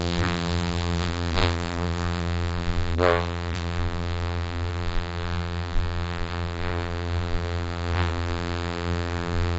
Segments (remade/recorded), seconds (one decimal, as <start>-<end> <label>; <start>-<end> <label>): 0.0-9.6 remade